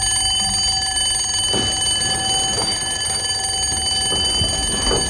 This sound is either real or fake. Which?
real